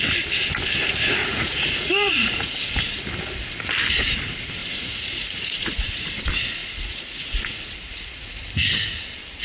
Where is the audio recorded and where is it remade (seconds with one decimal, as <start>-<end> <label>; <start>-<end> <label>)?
0.0-1.2 recorded; 1.2-2.6 remade; 2.6-4.6 recorded; 4.6-6.1 remade; 6.1-6.6 recorded; 6.6-8.4 remade; 8.4-9.4 recorded